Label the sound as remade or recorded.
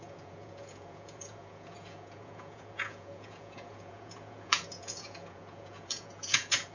remade